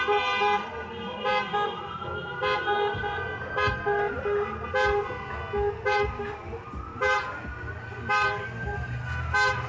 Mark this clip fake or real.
real